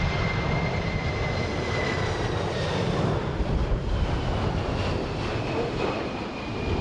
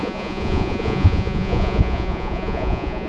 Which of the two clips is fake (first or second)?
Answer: second